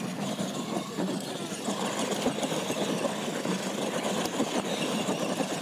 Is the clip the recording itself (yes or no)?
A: yes